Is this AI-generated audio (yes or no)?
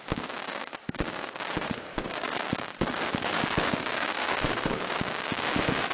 yes